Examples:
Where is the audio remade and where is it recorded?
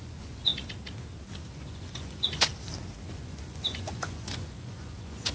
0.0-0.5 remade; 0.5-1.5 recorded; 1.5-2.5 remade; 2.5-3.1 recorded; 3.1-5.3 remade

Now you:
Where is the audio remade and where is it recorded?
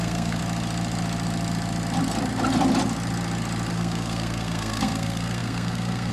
0.0-0.4 remade; 0.4-3.7 recorded; 3.7-6.1 remade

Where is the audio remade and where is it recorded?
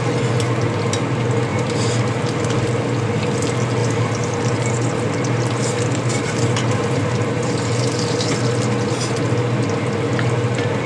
0.0-1.5 recorded; 1.5-2.2 remade; 2.2-3.8 recorded; 3.8-8.3 remade; 8.3-10.9 recorded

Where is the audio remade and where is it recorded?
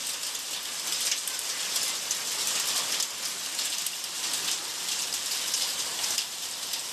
0.0-4.7 recorded; 4.7-6.5 remade; 6.5-6.9 recorded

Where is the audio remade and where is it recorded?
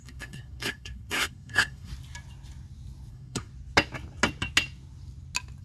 0.0-1.9 remade; 1.9-3.1 recorded; 3.1-3.5 remade; 3.5-5.6 recorded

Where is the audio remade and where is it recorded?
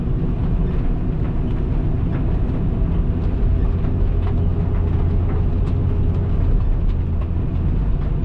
0.0-8.2 recorded